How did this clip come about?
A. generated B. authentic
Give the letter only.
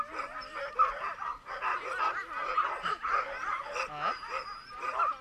B